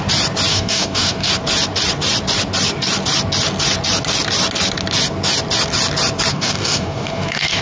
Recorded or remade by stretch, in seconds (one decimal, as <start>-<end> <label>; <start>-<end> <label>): 0.0-0.5 recorded; 0.5-1.3 remade; 1.3-6.3 recorded; 6.3-7.6 remade